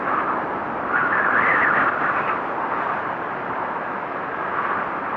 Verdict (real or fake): real